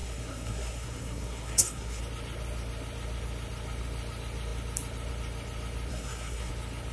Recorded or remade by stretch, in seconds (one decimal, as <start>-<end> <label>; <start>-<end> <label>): 0.0-2.0 remade; 2.0-5.9 recorded; 5.9-6.5 remade; 6.5-6.9 recorded